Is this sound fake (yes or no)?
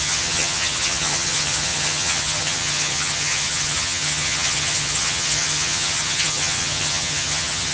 yes